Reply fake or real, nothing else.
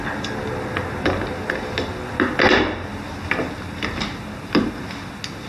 real